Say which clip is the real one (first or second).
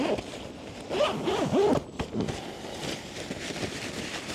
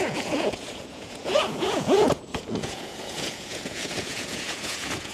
first